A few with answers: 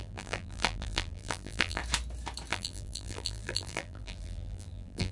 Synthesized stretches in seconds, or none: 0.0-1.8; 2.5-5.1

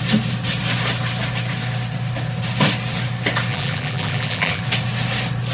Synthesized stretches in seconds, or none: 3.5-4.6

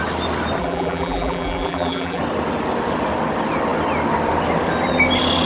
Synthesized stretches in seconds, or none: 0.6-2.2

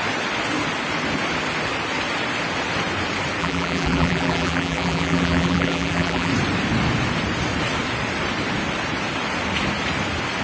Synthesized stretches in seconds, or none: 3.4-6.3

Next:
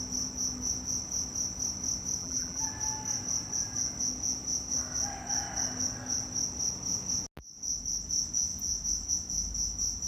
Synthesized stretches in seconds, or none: 2.2-2.7

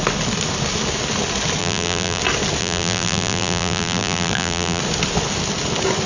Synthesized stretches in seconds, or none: 1.6-2.2; 2.6-4.8

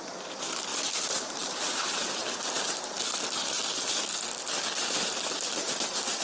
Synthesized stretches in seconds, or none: 0.0-2.2; 4.8-6.2

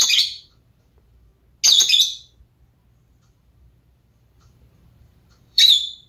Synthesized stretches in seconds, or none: 0.0-1.3; 3.3-6.1